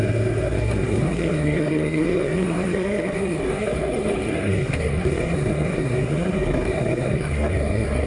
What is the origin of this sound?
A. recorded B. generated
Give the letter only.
B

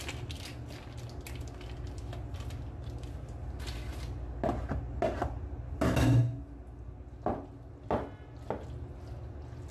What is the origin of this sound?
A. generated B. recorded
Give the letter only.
B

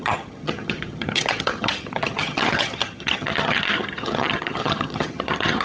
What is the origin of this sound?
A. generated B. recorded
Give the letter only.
A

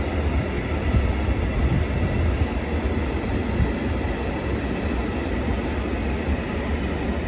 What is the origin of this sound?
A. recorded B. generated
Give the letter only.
A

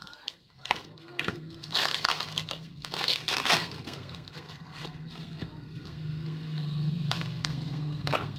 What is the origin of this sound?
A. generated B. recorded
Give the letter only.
A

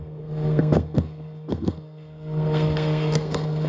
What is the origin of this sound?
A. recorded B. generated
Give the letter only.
B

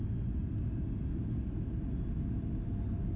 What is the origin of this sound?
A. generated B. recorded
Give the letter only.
B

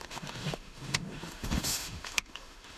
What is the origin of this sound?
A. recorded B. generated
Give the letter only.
B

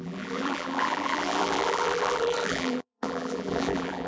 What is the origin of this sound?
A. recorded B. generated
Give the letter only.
B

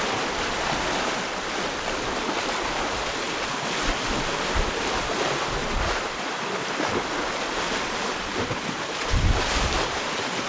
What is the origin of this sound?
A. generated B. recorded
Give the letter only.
B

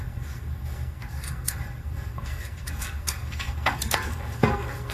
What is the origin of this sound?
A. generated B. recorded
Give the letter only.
A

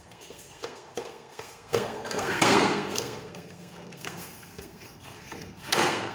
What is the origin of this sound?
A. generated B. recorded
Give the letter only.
A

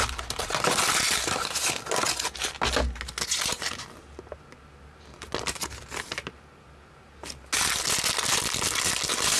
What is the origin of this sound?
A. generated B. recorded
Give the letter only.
B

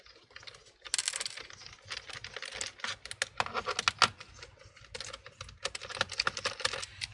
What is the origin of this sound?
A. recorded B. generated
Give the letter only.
A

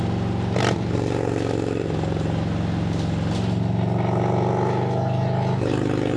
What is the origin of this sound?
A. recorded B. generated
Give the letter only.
A